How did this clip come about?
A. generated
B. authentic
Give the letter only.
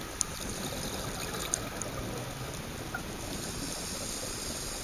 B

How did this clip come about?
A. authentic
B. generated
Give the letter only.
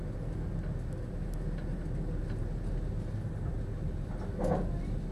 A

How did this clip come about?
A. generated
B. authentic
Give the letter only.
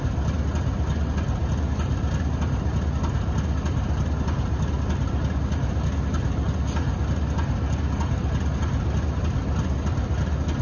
B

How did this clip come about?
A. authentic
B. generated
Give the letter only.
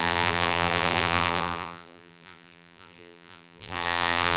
B